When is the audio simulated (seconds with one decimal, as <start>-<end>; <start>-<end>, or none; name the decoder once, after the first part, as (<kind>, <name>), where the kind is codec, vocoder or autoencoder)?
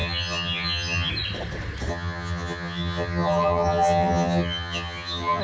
0.0-1.1 (vocoder, HiFi-GAN); 1.9-5.4